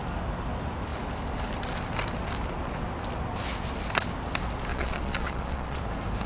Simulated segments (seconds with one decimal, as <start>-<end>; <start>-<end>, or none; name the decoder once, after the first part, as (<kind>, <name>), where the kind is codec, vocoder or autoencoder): 4.7-5.8 (vocoder, Vocos)